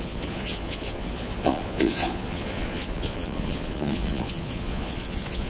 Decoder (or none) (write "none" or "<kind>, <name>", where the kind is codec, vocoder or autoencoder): vocoder, Vocos